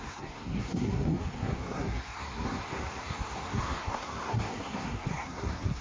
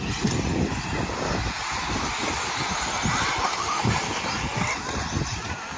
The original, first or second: second